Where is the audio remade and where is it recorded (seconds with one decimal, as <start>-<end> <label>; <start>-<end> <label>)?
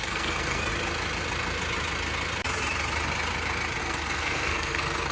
0.0-0.7 remade; 0.7-3.8 recorded; 3.8-5.1 remade